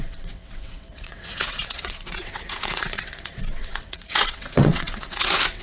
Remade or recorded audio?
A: remade